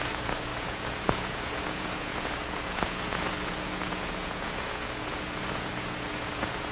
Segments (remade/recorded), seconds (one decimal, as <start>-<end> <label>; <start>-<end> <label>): 0.0-6.7 remade